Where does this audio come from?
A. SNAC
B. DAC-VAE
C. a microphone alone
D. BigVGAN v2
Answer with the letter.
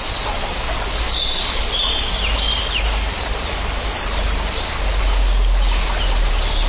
C